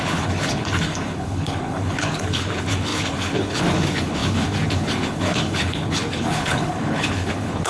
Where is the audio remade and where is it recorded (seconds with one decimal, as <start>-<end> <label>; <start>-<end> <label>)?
0.0-7.7 remade